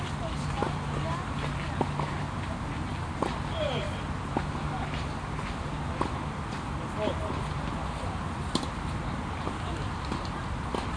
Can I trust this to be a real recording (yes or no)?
yes